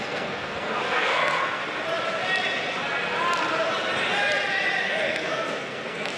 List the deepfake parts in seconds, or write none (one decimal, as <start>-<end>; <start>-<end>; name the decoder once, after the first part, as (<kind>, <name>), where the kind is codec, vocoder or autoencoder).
0.0-1.6 (codec, SNAC); 4.8-6.2